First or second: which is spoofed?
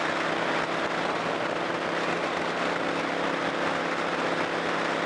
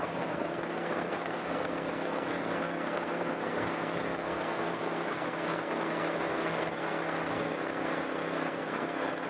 second